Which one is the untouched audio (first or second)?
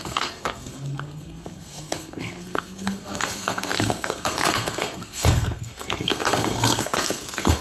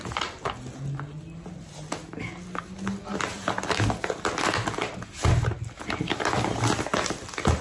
second